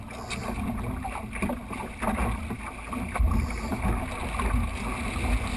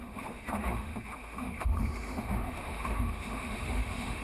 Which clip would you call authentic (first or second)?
first